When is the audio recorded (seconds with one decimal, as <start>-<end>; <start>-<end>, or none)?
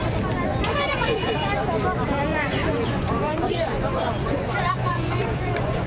0.0-0.5; 1.3-2.3